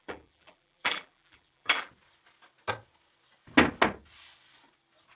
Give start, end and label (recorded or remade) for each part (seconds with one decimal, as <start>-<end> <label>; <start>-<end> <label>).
0.0-1.9 remade; 1.9-5.2 recorded

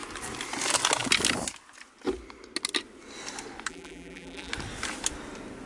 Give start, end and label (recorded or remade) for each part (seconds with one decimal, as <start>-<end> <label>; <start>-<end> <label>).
0.0-3.7 recorded; 3.7-4.5 remade; 4.5-5.7 recorded

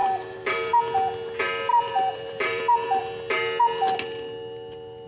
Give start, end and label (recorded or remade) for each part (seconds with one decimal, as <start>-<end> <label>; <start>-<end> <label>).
0.0-0.7 remade; 0.7-1.7 recorded; 1.7-3.0 remade; 3.0-5.1 recorded

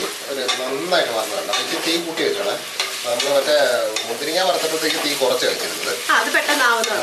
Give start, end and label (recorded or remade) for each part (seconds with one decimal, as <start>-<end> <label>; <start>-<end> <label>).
0.0-0.8 remade; 0.8-3.1 recorded; 3.1-6.4 remade; 6.4-7.0 recorded

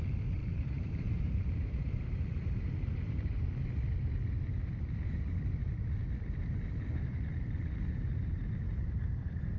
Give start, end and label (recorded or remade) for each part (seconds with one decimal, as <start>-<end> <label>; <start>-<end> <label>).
0.0-0.4 recorded; 0.4-3.5 remade; 3.5-9.6 recorded

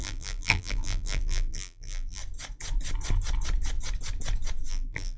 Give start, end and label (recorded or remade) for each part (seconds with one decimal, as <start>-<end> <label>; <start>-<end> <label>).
0.0-2.2 remade; 2.2-4.7 recorded; 4.7-5.2 remade

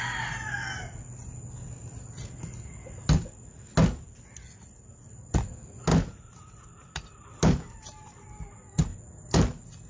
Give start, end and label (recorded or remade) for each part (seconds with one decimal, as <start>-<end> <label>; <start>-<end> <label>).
0.0-5.9 recorded; 5.9-7.3 remade; 7.3-9.9 recorded